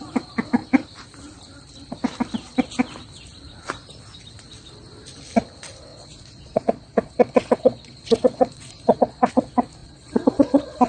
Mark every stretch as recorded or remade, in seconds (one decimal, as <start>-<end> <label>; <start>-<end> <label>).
0.0-5.9 recorded; 5.9-9.3 remade; 9.3-9.8 recorded; 9.8-10.9 remade